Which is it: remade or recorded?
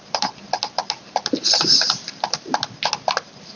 recorded